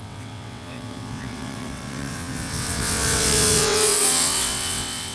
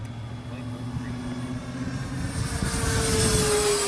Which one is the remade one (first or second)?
first